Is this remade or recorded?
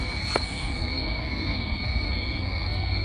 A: remade